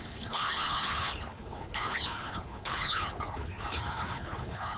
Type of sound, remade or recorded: remade